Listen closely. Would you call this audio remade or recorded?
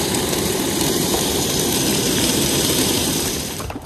remade